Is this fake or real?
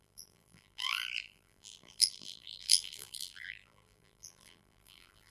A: fake